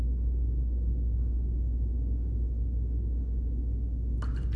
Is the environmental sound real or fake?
real